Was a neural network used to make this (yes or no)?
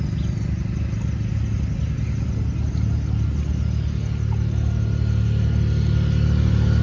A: no